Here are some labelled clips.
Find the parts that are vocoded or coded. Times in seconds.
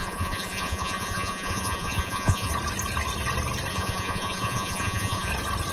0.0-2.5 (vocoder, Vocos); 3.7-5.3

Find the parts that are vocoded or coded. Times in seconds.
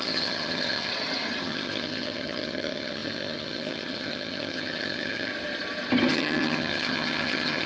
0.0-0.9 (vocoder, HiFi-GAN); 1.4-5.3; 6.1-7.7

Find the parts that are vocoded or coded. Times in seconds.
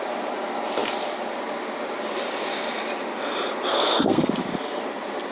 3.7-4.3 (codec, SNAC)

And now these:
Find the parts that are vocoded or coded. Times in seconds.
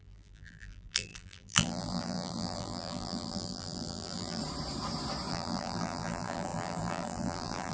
0.0-4.4 (vocoder, BigVGAN v2); 5.3-7.7